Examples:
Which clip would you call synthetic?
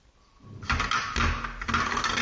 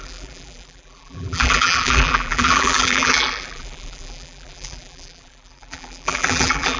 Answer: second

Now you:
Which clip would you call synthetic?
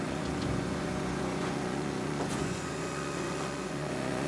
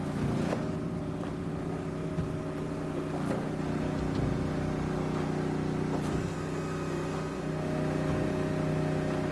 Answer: first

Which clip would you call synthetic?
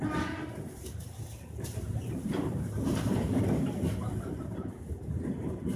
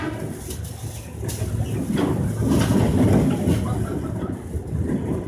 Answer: first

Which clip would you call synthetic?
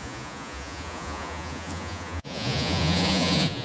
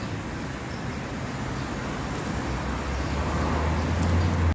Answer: first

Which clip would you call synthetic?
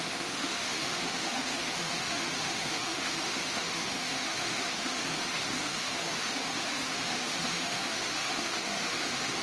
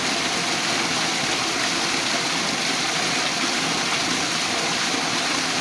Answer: first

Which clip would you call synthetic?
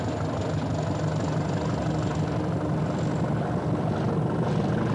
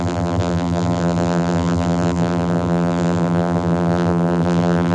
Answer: second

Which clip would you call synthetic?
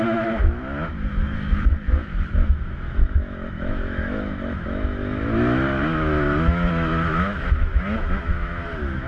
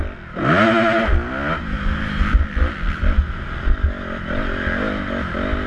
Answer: first